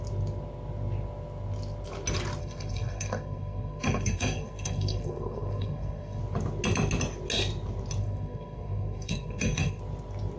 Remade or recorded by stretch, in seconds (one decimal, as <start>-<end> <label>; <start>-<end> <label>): 0.0-2.4 recorded; 2.4-6.2 remade; 6.2-8.0 recorded; 8.0-9.8 remade; 9.8-10.4 recorded